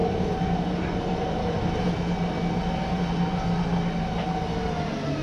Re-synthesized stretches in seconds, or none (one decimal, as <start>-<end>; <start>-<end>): none